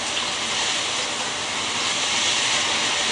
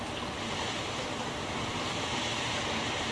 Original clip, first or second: first